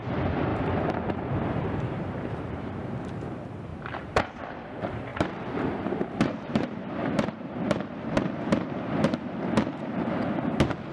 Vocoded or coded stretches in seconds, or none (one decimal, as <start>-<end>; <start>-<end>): 0.5-3.2; 3.7-4.4; 5.1-9.4